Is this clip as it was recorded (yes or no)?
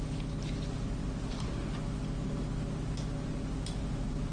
yes